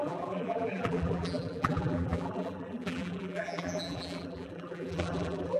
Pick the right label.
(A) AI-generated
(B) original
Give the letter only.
A